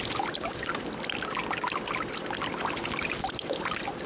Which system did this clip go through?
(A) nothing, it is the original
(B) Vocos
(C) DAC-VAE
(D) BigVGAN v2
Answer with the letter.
D